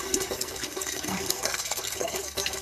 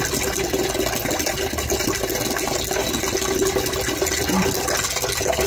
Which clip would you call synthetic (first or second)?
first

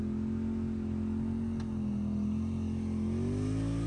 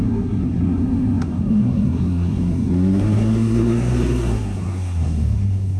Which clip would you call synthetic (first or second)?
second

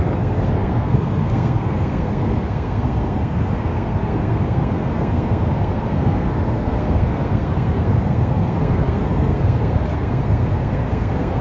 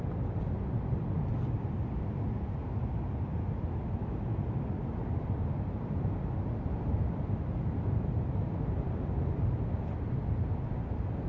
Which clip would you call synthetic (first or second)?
first